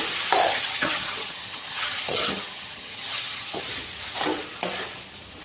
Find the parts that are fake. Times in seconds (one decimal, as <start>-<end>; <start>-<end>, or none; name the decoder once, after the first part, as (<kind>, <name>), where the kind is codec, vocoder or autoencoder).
0.4-3.6 (vocoder, HiFi-GAN)